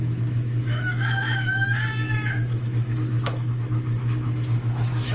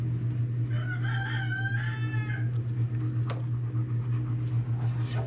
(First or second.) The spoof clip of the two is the first